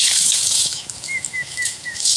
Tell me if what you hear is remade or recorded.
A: remade